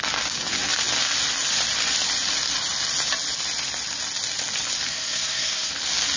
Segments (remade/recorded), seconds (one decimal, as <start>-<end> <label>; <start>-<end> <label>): 0.0-4.9 recorded; 4.9-5.7 remade; 5.7-6.2 recorded